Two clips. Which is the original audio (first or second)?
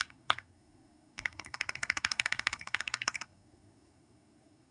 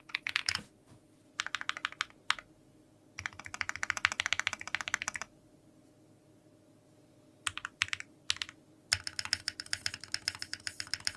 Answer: second